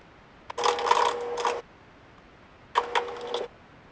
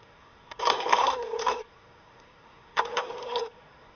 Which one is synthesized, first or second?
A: second